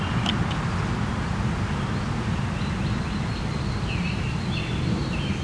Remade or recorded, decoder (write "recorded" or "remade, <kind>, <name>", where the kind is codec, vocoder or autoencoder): recorded